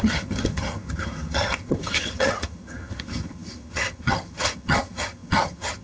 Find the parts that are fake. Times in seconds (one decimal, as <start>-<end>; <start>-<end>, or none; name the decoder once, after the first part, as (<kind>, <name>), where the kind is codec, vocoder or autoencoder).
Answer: 0.0-5.8 (vocoder, HiFi-GAN)